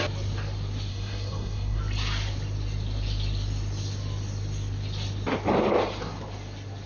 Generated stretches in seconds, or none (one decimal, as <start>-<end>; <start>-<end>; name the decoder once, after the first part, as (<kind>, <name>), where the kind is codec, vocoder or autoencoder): 0.9-1.8 (codec, SNAC)